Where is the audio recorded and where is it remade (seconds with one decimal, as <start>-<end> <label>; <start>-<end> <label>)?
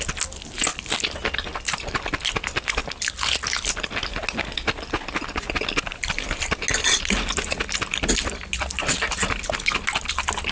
0.0-10.5 recorded